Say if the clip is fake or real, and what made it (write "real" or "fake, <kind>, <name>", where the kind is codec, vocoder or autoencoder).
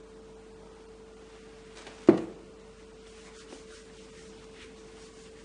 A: real